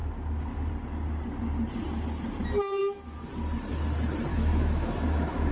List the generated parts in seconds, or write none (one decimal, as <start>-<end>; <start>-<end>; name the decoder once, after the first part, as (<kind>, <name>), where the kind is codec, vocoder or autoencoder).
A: 0.0-0.7 (autoencoder, DAC-VAE); 2.8-3.3; 4.3-5.5